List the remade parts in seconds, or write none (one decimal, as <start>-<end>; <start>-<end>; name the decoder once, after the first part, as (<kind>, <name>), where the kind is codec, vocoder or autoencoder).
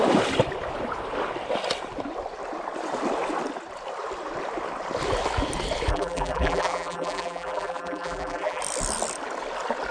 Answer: 5.9-8.6 (vocoder, BigVGAN v2)